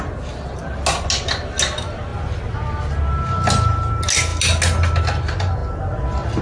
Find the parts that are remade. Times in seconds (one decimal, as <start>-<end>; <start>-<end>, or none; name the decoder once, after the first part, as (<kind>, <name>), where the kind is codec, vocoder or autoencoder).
none